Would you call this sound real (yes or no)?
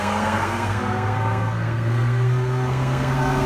no